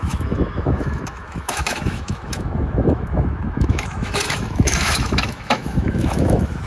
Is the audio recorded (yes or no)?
no